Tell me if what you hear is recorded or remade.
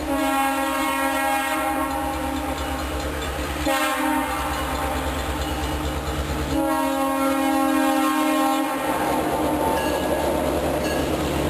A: recorded